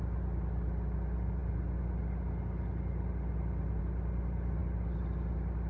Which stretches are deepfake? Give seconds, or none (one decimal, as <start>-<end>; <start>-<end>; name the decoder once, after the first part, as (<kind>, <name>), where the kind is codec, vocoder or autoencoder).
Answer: none